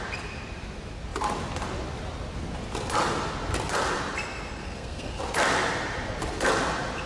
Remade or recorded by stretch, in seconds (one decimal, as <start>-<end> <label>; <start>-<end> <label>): 0.0-4.6 recorded; 4.6-5.2 remade; 5.2-7.1 recorded

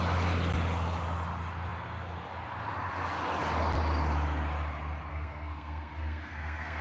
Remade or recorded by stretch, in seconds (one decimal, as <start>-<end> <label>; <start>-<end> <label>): 0.0-5.1 recorded; 5.1-6.8 remade

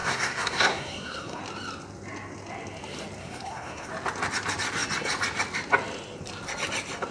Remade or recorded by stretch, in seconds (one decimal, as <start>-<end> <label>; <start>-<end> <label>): 0.0-1.4 remade; 1.4-3.2 recorded; 3.2-3.9 remade; 3.9-7.1 recorded

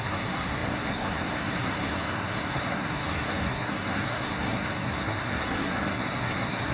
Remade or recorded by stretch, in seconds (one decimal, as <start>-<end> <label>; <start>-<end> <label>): 0.0-6.7 remade